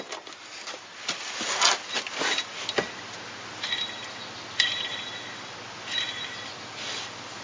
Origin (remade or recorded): recorded